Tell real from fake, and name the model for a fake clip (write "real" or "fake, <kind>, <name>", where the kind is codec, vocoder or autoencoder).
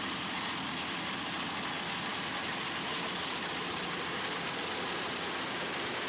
real